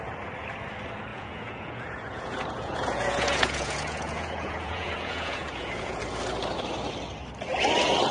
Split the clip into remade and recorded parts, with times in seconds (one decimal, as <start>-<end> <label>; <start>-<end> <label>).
0.0-1.1 recorded; 1.1-6.0 remade; 6.0-8.1 recorded